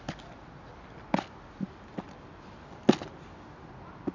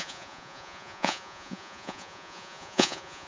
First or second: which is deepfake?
second